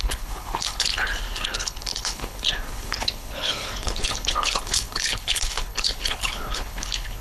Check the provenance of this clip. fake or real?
fake